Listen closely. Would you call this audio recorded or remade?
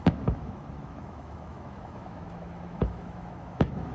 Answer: remade